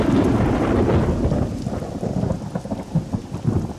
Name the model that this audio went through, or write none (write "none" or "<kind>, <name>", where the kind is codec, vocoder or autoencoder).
none